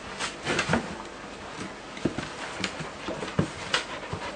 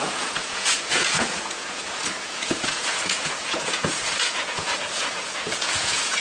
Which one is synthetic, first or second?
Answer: second